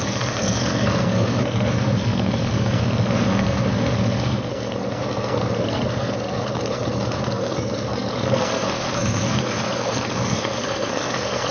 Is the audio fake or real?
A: fake